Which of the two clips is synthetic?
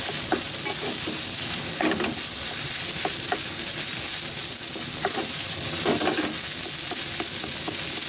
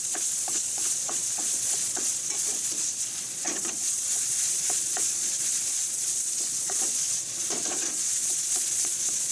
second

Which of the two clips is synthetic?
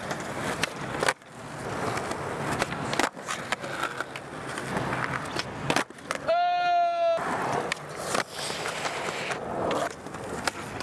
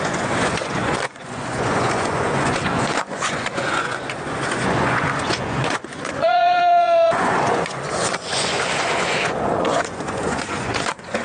second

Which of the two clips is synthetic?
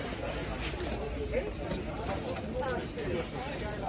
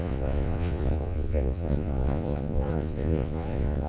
second